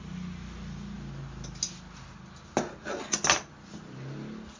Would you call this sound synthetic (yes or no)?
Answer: no